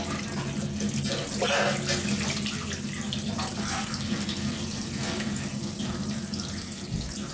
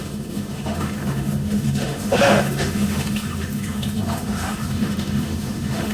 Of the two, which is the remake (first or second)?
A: second